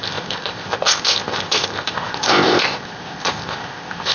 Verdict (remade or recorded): remade